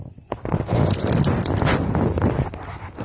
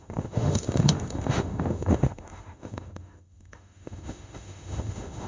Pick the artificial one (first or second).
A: second